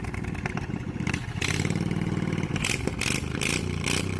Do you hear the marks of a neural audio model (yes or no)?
no